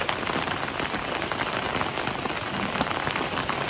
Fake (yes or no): no